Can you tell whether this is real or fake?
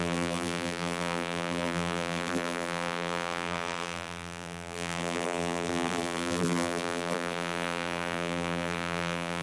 fake